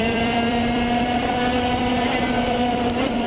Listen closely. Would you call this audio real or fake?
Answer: fake